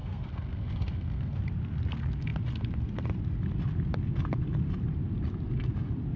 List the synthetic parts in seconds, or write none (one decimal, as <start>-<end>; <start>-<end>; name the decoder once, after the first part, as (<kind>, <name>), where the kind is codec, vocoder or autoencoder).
0.0-1.4 (codec, SNAC)